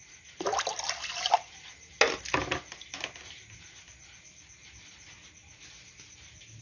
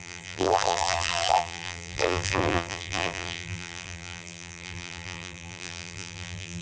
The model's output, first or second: second